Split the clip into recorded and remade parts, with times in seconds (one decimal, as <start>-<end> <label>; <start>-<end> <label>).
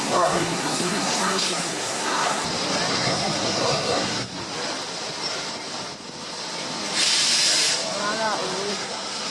0.0-2.4 remade; 2.4-2.9 recorded; 2.9-4.4 remade; 4.4-8.7 recorded; 8.7-9.3 remade